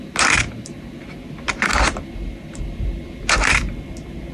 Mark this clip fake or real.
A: real